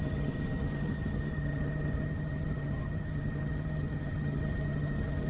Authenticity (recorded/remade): remade